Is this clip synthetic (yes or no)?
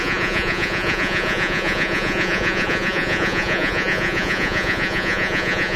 yes